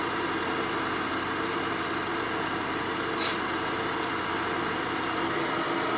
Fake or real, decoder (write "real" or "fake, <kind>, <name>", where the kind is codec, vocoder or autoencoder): real